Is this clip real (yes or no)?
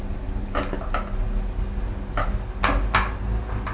yes